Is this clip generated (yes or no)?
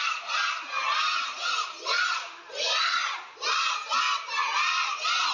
no